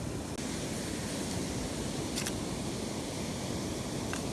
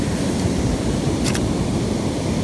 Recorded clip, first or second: first